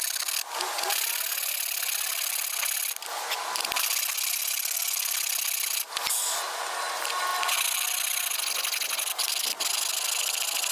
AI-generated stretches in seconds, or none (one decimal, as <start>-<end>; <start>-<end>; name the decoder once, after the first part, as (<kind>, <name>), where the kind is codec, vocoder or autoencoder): none